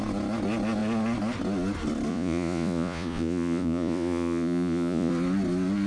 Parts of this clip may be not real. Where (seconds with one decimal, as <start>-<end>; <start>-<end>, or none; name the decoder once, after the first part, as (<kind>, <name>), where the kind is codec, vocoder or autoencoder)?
2.1-5.1 (vocoder, Vocos)